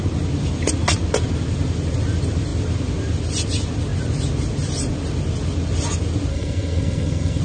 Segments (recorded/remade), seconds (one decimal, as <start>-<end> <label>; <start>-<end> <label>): 0.0-6.3 recorded; 6.3-7.4 remade